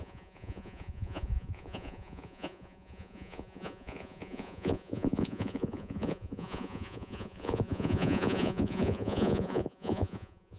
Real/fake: fake